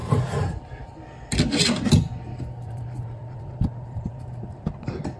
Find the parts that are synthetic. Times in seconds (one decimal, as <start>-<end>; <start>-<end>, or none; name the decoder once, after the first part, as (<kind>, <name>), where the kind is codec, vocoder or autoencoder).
none